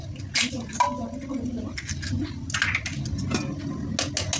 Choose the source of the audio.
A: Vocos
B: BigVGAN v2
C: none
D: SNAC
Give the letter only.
C